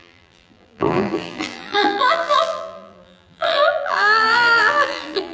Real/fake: fake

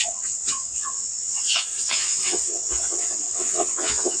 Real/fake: fake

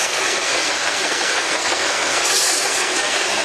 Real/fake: fake